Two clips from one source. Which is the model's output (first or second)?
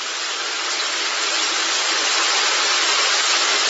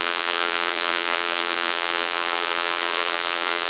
second